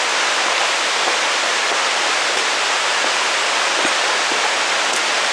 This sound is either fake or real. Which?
real